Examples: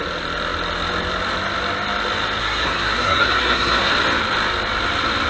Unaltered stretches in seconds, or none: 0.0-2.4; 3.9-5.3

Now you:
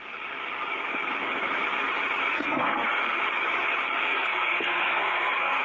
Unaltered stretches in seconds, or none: 0.0-2.3; 3.2-4.1

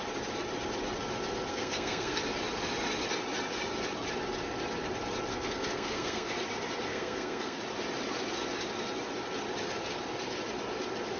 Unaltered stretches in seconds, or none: 0.0-1.5; 2.2-5.3; 6.3-6.9; 7.6-11.2

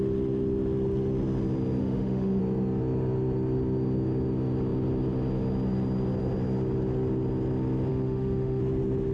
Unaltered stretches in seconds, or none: 0.0-1.8; 2.4-7.9; 8.6-9.1

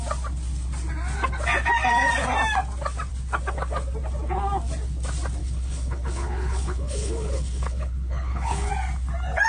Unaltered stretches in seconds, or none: 0.0-5.4; 8.7-9.5

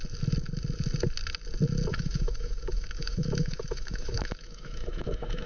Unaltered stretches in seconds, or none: 0.0-1.9